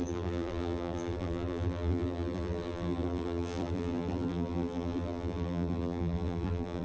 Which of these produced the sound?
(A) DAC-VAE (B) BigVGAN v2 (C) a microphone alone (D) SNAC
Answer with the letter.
B